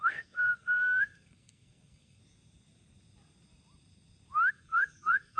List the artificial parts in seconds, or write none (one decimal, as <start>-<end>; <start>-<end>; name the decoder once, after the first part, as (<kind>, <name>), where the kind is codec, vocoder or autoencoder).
0.0-2.2 (codec, SNAC); 4.5-5.4